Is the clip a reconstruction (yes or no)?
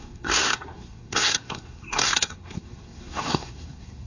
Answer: yes